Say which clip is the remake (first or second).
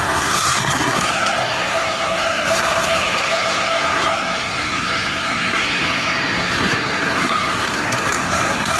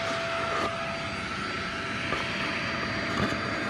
first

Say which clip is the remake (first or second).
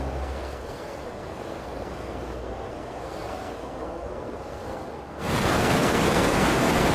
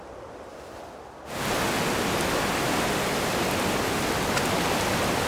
first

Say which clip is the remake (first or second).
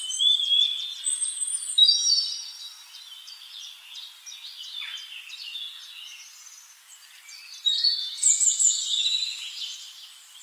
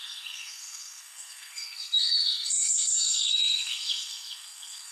second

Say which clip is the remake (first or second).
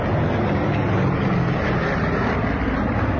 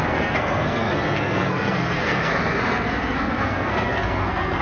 second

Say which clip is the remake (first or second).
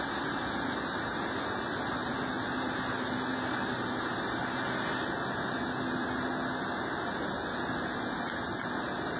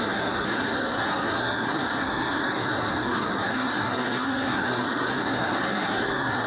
second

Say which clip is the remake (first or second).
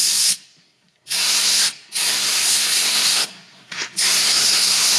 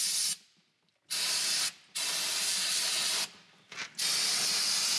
first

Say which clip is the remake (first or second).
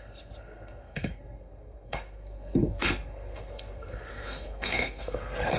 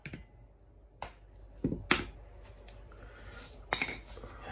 first